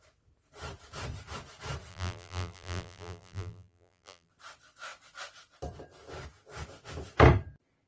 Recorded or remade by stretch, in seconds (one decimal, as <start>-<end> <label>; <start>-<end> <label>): 0.0-1.9 recorded; 1.9-4.3 remade; 4.3-7.9 recorded